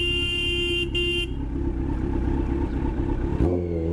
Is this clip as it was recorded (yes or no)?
yes